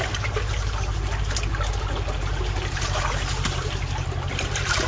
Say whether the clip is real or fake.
real